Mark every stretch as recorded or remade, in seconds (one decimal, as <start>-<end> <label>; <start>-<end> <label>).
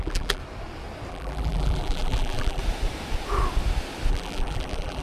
0.0-0.4 remade; 0.4-1.1 recorded; 1.1-2.6 remade; 2.6-4.1 recorded; 4.1-5.0 remade